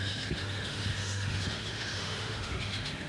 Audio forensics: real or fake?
fake